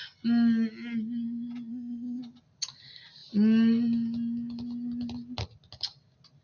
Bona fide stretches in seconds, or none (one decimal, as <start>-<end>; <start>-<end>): 0.0-1.7; 2.2-6.4